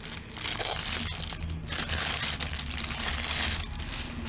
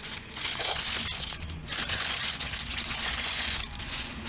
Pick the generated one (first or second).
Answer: second